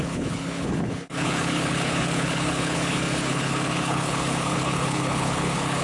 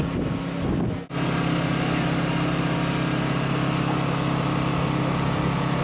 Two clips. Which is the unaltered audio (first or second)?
second